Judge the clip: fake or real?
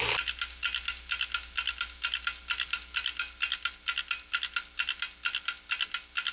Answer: real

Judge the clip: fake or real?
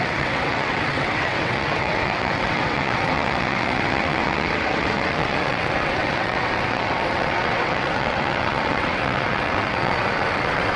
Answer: fake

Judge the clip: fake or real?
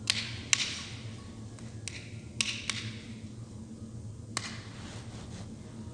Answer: real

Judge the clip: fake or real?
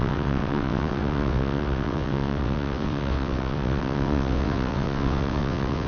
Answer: fake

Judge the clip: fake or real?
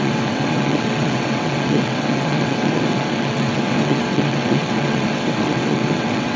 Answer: fake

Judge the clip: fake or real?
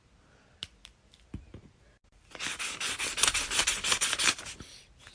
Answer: real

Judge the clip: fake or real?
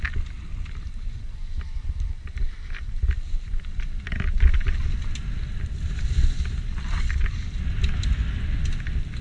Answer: real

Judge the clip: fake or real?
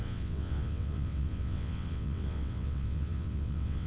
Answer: fake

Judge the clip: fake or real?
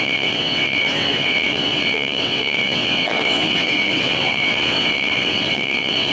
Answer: fake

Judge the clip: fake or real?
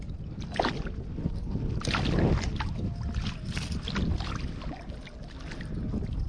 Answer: real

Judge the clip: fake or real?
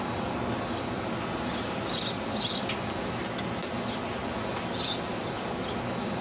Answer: real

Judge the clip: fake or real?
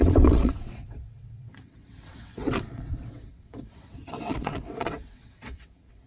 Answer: fake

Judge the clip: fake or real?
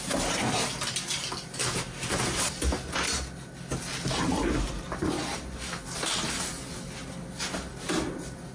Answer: real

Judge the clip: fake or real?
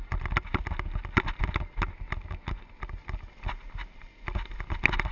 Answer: real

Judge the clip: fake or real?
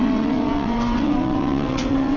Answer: fake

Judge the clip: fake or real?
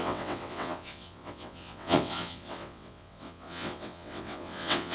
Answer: fake